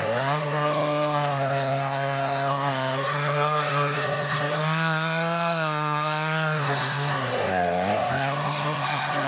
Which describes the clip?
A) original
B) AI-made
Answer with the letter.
B